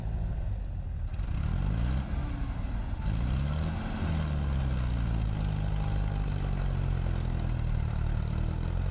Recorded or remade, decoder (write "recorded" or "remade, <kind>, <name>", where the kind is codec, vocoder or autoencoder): recorded